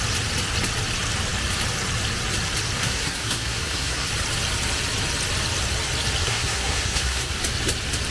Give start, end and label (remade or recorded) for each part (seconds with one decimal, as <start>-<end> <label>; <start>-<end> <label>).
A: 0.0-2.8 recorded; 2.8-4.1 remade; 4.1-6.2 recorded; 6.2-7.3 remade; 7.3-8.1 recorded